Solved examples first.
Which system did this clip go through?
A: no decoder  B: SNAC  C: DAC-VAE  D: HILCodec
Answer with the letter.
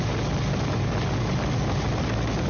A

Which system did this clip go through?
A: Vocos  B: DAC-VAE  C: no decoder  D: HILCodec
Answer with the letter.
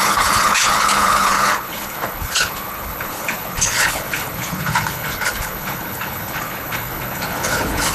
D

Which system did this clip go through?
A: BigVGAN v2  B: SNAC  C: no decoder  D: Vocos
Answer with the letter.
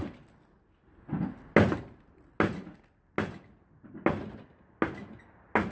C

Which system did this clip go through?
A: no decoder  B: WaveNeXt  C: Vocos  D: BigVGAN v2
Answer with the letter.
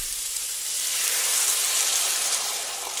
D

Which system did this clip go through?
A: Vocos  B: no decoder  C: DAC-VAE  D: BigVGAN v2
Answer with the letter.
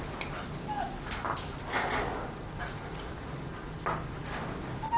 B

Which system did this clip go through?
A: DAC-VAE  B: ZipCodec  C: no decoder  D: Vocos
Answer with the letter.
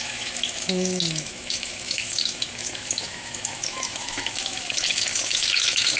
A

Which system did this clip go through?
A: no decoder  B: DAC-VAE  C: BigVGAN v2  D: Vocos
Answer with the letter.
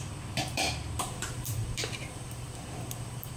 C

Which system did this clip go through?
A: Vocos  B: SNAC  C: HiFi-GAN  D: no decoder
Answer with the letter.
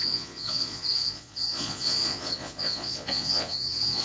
A